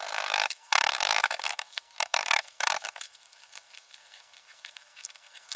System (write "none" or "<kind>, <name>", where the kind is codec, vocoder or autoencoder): codec, SNAC